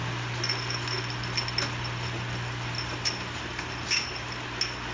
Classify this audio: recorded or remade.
recorded